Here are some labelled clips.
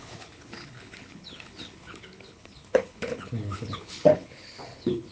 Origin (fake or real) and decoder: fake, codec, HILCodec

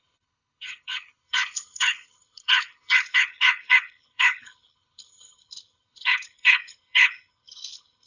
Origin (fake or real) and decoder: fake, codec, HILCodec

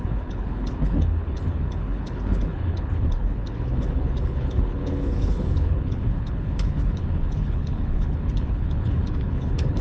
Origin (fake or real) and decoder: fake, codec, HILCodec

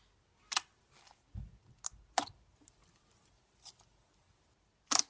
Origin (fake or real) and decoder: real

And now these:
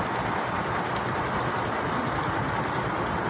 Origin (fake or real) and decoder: real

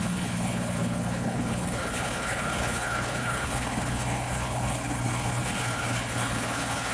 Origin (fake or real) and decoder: fake, codec, HILCodec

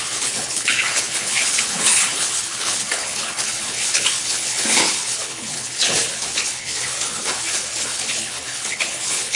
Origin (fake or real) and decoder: fake, codec, HILCodec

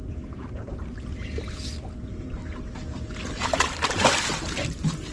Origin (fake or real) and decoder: real